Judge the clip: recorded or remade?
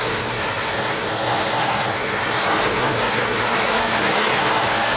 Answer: remade